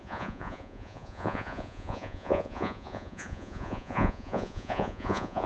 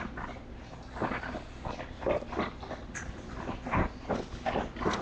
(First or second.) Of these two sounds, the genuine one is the second